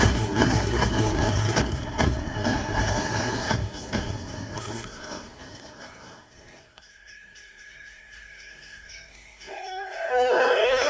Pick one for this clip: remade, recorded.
remade